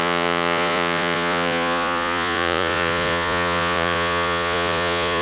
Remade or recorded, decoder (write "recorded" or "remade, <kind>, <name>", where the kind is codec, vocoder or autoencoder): remade, vocoder, Vocos